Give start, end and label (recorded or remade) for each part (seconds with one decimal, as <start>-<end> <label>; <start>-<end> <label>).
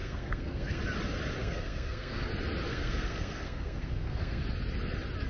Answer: 0.0-0.8 remade; 0.8-1.4 recorded; 1.4-2.3 remade; 2.3-2.7 recorded; 2.7-4.4 remade; 4.4-5.3 recorded